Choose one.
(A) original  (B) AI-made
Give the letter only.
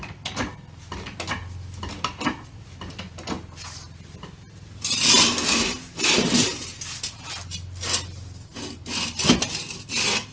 A